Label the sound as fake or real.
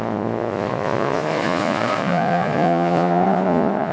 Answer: fake